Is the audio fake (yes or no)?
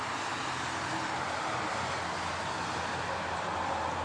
no